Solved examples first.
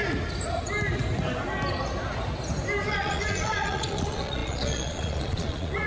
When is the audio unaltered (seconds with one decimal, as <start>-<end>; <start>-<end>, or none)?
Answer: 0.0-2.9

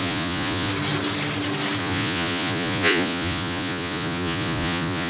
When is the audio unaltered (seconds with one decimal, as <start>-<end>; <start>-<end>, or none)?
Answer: 0.7-1.8

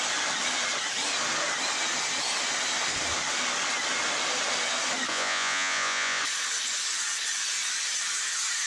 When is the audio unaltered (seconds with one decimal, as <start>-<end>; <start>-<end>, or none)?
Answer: 0.0-5.1; 6.2-8.7

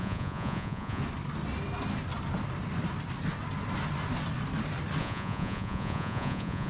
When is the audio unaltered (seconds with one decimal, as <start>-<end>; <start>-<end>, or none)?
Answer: 1.0-5.0